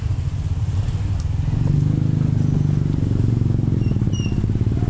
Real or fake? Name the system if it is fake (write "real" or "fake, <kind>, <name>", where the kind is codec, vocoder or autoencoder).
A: real